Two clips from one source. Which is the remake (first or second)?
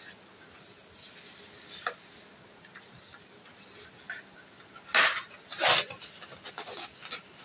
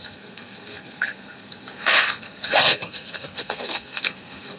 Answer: second